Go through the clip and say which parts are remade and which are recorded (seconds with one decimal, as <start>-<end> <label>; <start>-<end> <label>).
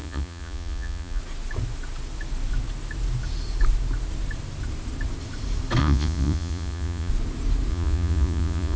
0.0-1.2 remade; 1.2-5.8 recorded; 5.8-7.1 remade; 7.1-7.7 recorded; 7.7-8.8 remade